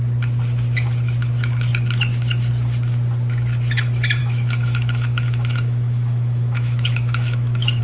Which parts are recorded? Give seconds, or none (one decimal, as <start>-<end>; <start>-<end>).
0.0-4.2